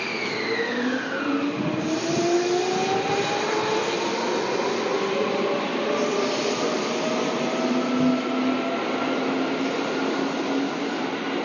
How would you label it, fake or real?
real